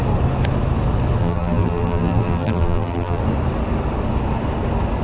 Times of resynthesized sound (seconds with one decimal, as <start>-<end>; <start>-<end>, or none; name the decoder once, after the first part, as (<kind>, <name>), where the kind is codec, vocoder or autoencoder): 1.2-3.2 (vocoder, BigVGAN v2)